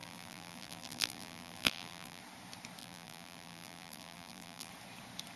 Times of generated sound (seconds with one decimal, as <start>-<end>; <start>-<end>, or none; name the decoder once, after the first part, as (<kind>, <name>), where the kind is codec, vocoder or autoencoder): 0.0-2.2 (vocoder, BigVGAN v2); 2.8-4.7